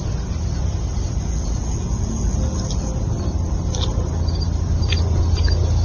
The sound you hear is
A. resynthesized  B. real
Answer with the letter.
B